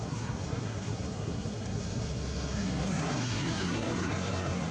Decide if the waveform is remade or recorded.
remade